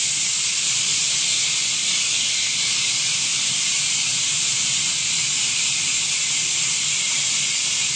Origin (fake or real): real